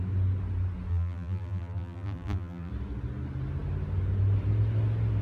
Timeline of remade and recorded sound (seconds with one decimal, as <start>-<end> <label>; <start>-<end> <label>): 0.0-0.9 recorded; 0.9-2.7 remade; 2.7-5.2 recorded